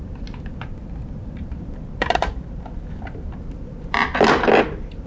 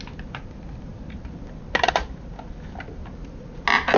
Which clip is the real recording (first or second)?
second